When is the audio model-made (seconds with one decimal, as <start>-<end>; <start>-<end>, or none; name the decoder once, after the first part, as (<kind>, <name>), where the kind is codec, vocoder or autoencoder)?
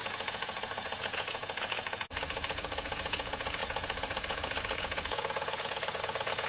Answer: 0.0-6.5 (vocoder, Vocos)